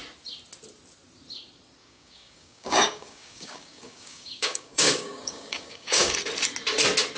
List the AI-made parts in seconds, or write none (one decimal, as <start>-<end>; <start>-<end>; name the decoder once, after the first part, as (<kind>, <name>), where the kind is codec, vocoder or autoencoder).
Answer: 1.8-6.1 (codec, DAC)